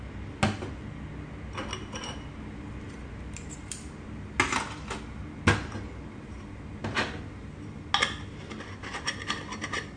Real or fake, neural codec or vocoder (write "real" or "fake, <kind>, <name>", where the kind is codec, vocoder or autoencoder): real